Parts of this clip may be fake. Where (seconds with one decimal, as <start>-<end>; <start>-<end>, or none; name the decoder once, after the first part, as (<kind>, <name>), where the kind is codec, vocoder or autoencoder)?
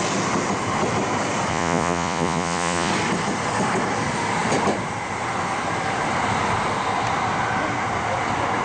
1.5-2.9 (vocoder, Vocos)